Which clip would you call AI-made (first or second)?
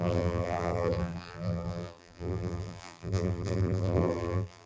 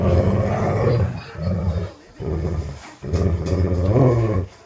first